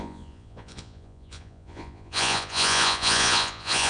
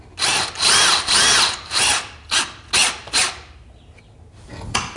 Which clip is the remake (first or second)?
first